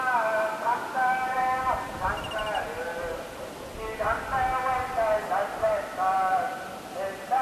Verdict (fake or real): real